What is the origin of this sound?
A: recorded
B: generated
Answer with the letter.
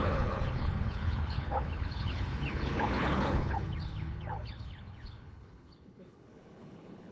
B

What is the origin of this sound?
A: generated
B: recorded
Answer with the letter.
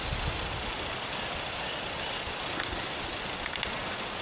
B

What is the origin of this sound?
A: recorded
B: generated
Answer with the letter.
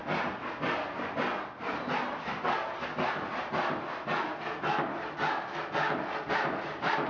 A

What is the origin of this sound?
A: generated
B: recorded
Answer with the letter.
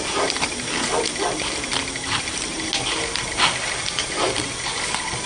B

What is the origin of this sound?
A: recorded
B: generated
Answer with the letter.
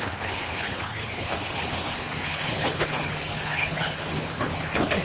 B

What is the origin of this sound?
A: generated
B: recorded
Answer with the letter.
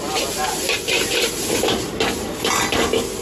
B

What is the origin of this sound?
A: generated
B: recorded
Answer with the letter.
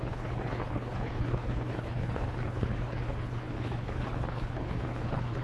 A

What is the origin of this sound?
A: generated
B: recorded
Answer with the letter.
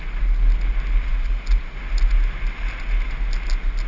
B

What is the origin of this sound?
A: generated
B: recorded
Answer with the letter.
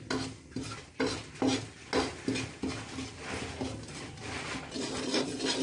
B